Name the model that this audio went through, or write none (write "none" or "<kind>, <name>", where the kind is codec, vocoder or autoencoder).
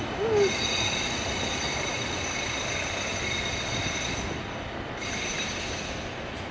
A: none